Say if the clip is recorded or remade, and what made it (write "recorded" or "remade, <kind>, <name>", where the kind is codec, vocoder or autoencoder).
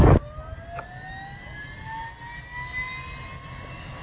recorded